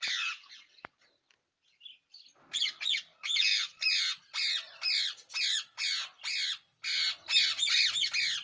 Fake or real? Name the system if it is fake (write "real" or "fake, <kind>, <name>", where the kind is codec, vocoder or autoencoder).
real